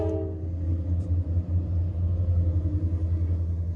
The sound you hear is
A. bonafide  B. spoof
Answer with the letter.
A